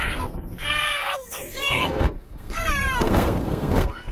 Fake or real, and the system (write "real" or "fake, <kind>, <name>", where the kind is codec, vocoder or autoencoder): fake, codec, SNAC